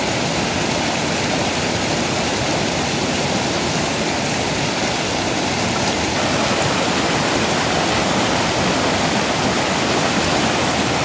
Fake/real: real